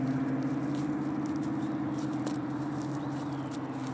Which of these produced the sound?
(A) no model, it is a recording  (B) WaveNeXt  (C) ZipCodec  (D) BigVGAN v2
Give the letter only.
A